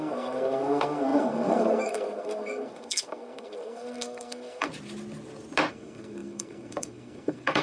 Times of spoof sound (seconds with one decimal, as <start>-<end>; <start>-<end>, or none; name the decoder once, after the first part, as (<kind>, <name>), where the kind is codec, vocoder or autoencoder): 0.0-4.7 (codec, SNAC); 5.7-7.6